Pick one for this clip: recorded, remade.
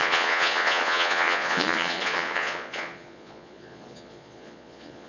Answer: remade